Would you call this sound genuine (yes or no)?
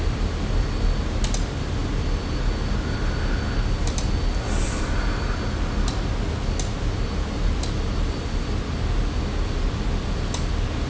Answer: yes